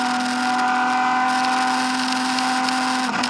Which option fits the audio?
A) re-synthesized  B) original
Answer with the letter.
B